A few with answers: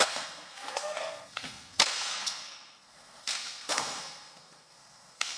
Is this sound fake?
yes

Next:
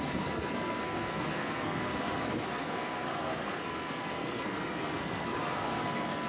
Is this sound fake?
yes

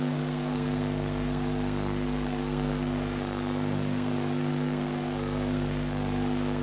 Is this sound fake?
yes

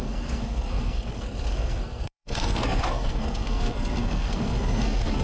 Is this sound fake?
yes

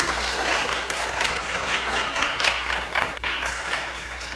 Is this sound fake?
yes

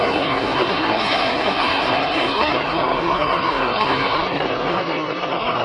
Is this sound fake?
yes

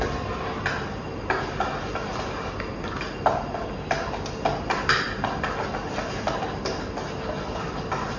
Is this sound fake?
no